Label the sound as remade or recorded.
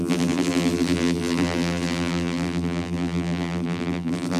remade